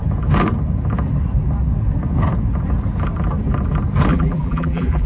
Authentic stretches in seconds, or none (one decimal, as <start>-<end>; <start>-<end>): 0.0-4.1